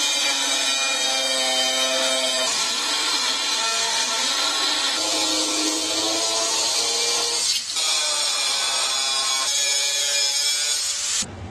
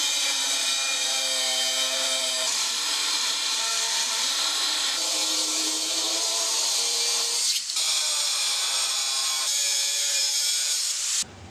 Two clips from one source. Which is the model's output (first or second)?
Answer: second